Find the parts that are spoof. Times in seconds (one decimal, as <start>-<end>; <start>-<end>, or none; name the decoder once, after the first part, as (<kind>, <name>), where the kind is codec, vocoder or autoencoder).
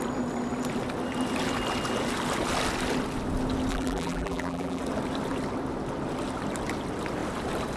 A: 3.7-4.8 (vocoder, BigVGAN v2)